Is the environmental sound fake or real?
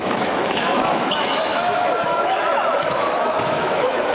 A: fake